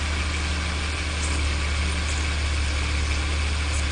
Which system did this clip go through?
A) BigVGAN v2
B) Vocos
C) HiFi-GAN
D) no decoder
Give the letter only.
D